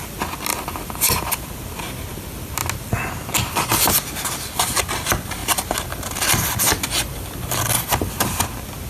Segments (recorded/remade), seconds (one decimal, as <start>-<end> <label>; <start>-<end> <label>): 0.0-0.5 recorded; 0.5-1.5 remade; 1.5-5.4 recorded; 5.4-8.4 remade; 8.4-8.9 recorded